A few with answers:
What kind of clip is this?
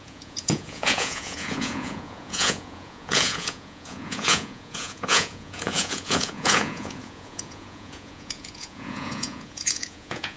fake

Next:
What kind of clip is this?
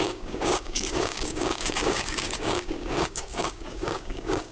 fake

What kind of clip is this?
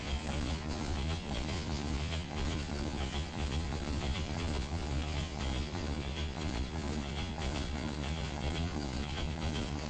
fake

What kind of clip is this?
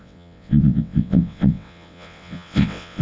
fake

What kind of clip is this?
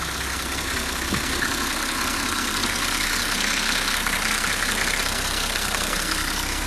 fake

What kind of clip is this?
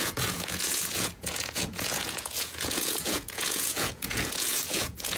fake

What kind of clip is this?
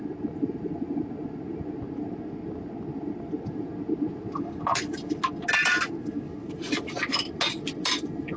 real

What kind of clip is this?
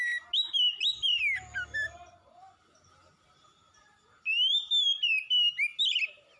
real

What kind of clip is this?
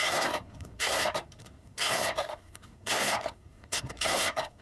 fake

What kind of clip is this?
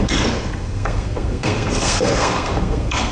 fake